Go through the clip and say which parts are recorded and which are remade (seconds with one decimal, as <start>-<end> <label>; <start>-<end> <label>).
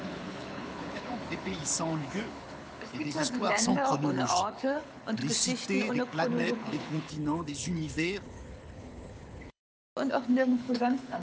0.0-5.2 remade; 5.2-5.9 recorded; 5.9-9.6 remade; 9.6-10.1 recorded; 10.1-11.2 remade